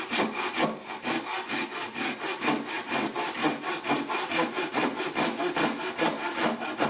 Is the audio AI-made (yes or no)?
no